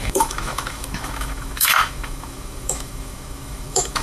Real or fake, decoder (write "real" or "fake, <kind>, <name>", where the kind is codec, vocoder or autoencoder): fake, autoencoder, DAC-VAE